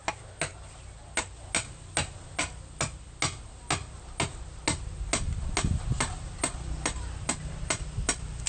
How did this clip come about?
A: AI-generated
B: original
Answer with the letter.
B